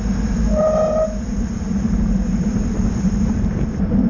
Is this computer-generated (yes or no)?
yes